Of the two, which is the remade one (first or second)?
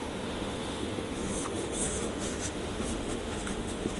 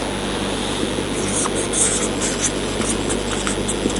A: first